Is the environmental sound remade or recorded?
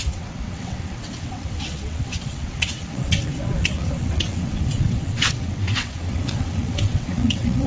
remade